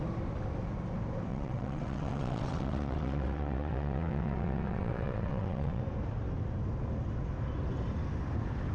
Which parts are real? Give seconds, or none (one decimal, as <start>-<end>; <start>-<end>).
0.0-1.3; 5.8-8.7